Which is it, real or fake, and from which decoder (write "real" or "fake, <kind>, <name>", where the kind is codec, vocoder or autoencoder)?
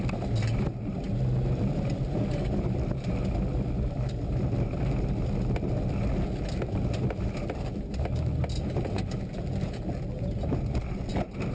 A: real